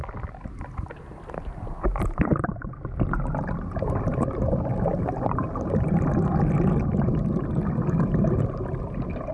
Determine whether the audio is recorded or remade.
recorded